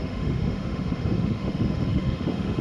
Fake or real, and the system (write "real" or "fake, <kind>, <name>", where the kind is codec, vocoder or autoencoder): fake, autoencoder, DAC-VAE